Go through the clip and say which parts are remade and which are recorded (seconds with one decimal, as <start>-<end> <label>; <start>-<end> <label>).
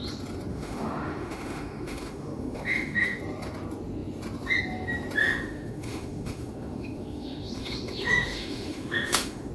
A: 0.0-0.5 recorded; 0.5-3.2 remade; 3.2-5.2 recorded; 5.2-9.5 remade